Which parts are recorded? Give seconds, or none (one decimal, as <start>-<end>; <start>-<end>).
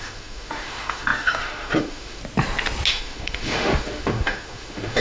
2.2-2.9